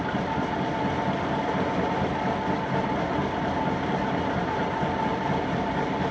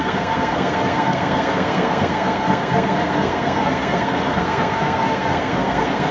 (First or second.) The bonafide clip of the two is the first